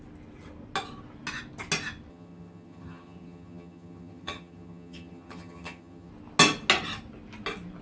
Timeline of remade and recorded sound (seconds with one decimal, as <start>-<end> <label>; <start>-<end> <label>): 0.0-2.1 recorded; 2.1-6.1 remade; 6.1-7.8 recorded